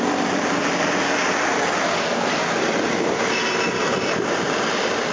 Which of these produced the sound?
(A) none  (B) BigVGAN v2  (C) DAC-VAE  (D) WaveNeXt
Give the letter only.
B